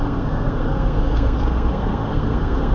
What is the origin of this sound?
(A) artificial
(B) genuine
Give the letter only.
A